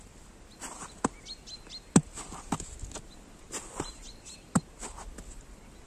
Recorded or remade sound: recorded